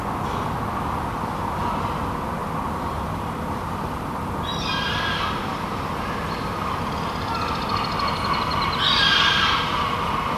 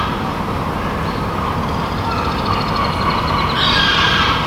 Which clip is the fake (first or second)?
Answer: second